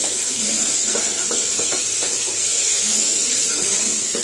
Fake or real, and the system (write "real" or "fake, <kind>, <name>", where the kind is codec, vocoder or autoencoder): fake, codec, SNAC